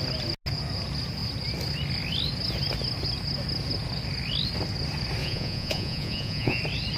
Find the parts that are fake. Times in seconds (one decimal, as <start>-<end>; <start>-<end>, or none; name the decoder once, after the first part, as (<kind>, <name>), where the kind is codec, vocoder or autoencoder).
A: 5.2-6.6 (vocoder, Vocos)